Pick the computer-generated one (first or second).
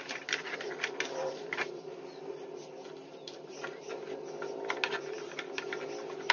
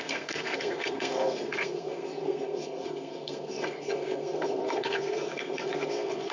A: second